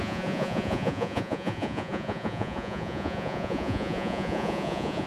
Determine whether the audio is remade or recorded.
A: remade